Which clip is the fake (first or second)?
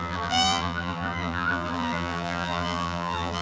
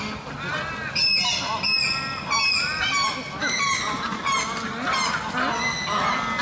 first